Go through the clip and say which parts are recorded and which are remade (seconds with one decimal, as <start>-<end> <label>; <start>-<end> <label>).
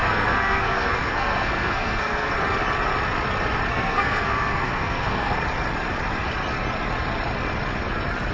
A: 0.0-2.3 remade; 2.3-3.7 recorded; 3.7-5.4 remade; 5.4-8.3 recorded